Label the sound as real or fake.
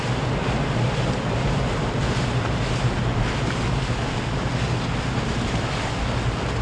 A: real